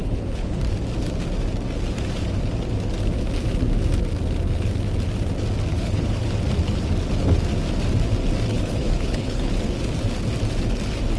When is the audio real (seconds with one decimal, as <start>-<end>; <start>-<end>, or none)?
0.6-5.7; 6.3-8.5; 9.5-11.2